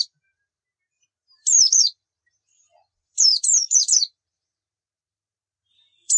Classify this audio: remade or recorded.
remade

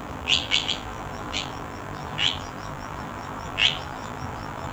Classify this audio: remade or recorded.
remade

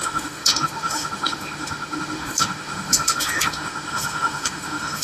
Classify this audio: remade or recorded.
remade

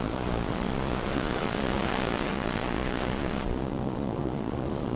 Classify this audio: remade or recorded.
remade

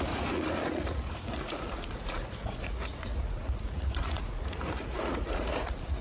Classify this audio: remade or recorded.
remade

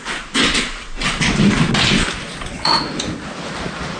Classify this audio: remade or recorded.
recorded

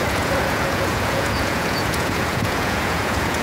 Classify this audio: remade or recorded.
remade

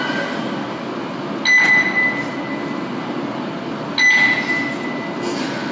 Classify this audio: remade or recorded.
recorded